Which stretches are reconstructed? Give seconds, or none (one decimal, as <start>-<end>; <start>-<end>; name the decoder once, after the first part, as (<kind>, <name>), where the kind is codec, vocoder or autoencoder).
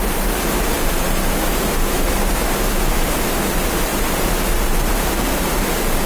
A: 1.2-2.1 (autoencoder, DAC-VAE)